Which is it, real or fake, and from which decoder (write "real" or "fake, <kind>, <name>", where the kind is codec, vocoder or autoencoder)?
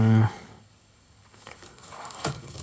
fake, codec, DAC